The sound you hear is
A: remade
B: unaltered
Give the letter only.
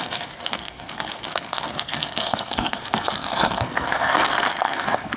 A